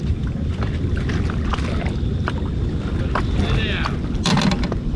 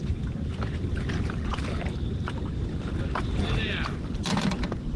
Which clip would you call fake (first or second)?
second